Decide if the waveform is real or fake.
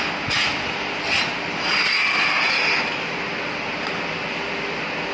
real